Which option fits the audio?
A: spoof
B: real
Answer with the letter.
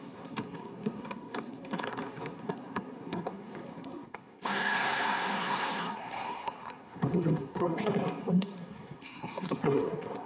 A